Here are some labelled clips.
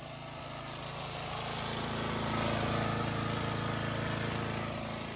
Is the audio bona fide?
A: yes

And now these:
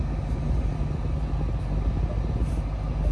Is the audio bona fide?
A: yes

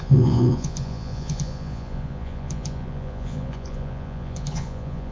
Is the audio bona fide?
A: no